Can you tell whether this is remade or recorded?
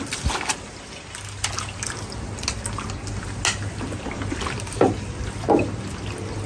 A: recorded